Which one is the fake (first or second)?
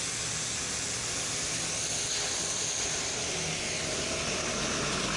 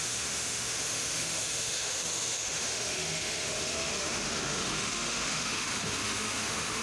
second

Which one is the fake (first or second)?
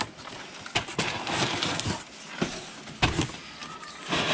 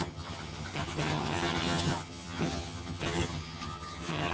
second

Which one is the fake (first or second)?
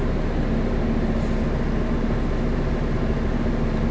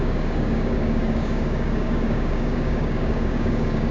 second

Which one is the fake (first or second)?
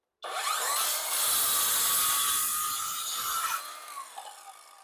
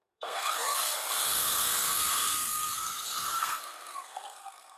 second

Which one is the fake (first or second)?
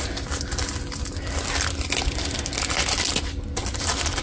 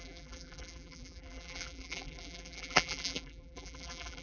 second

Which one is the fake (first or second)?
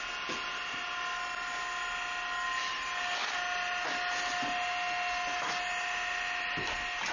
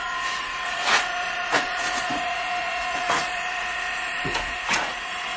second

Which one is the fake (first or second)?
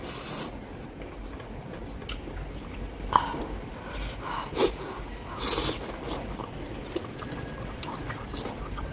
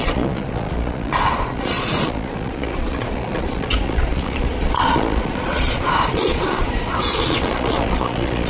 second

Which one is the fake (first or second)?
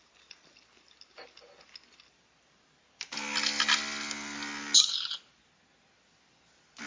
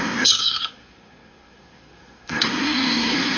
second